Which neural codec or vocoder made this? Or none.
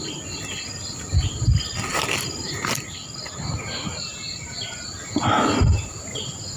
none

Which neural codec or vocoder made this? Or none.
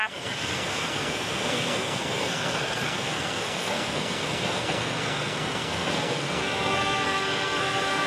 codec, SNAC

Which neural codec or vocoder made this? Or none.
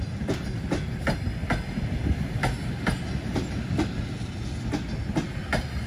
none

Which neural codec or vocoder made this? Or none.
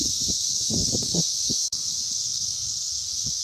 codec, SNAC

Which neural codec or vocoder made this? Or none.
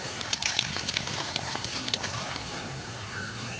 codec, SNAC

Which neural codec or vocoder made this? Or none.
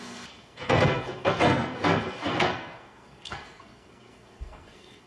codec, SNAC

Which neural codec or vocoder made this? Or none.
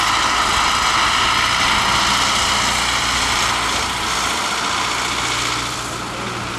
none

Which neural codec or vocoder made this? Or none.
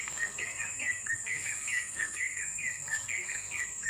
codec, SNAC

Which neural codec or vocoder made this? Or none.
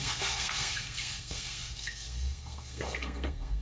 codec, SNAC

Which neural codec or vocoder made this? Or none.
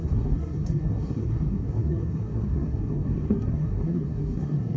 codec, SNAC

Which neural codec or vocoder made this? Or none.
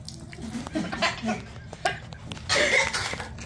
none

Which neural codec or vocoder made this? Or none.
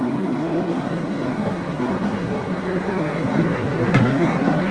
codec, SNAC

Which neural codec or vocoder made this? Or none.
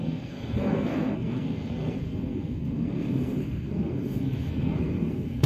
codec, SNAC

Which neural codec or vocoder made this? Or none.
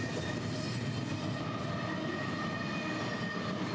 none